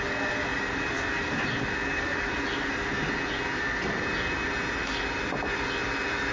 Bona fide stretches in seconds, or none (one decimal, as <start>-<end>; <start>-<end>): 0.0-0.5; 2.4-6.3

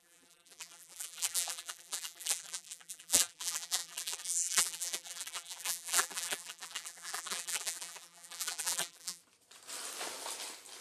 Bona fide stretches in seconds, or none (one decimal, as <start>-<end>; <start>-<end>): 9.2-10.8

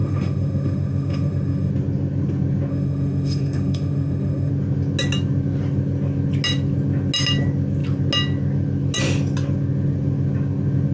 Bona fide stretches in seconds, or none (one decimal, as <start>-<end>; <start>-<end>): 1.7-2.7; 4.5-10.9

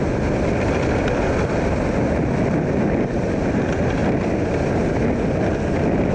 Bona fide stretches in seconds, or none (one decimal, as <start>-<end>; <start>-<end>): 0.0-6.1

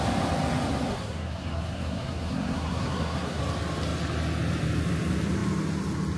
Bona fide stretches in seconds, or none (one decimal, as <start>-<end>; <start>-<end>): 0.0-0.9; 3.4-6.2